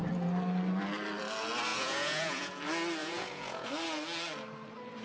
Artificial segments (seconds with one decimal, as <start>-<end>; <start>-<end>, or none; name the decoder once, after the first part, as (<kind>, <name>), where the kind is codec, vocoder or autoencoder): 1.7-2.6 (vocoder, Vocos); 3.0-3.7